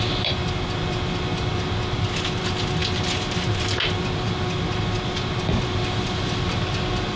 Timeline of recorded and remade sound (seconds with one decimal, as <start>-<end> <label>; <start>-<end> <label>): 0.0-7.2 recorded